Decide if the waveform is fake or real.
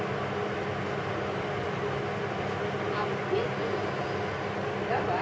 real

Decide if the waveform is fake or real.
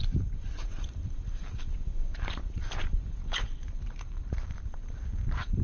fake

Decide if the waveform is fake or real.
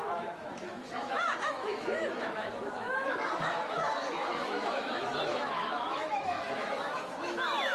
fake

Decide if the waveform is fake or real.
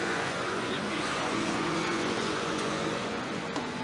fake